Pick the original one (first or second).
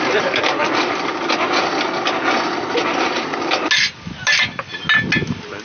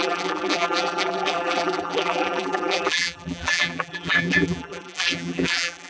first